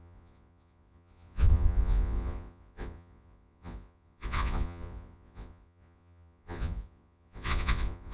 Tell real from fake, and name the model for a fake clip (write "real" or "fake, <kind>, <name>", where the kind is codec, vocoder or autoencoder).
fake, vocoder, Vocos